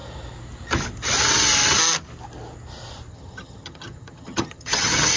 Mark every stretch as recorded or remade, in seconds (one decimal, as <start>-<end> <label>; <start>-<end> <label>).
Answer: 0.0-3.1 recorded; 3.1-5.2 remade

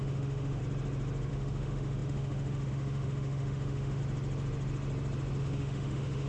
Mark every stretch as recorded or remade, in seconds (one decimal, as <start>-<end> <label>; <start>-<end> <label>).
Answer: 0.0-0.6 remade; 0.6-1.3 recorded; 1.3-4.0 remade; 4.0-5.4 recorded; 5.4-6.3 remade